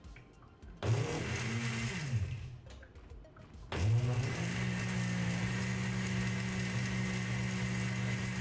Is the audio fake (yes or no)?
no